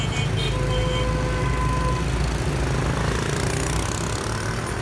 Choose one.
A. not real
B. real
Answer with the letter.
B